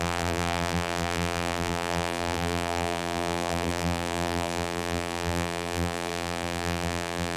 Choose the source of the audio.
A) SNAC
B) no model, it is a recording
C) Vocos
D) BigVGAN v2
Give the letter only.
D